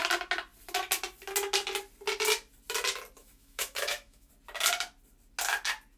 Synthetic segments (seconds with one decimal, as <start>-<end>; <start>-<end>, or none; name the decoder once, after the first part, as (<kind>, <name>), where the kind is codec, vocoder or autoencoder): 3.2-4.3 (autoencoder, DAC-VAE)